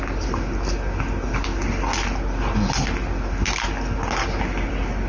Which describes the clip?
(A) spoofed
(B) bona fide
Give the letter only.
B